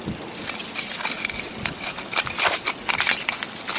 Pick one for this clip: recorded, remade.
recorded